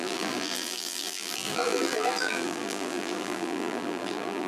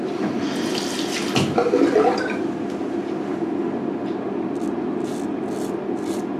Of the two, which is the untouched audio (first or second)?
second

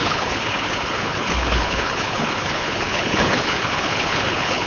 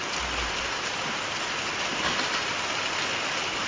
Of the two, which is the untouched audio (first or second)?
second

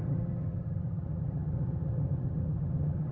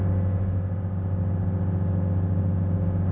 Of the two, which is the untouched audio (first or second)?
second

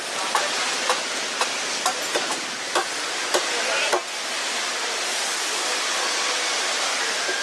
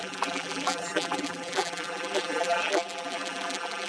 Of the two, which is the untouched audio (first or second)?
first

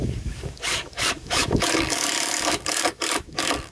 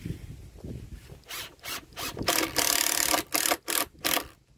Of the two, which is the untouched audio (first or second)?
second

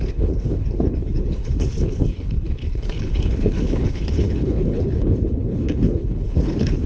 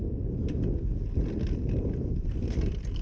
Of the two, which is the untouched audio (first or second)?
second